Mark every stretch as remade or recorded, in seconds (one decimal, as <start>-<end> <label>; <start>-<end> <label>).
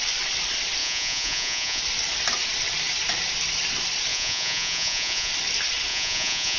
0.0-0.8 recorded; 0.8-1.8 remade; 1.8-4.1 recorded; 4.1-5.3 remade; 5.3-5.9 recorded; 5.9-6.6 remade